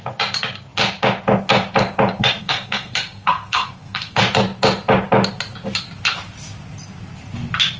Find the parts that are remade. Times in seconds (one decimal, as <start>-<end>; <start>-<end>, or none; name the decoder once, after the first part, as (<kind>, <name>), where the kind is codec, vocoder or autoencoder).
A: 2.4-4.2 (codec, SNAC)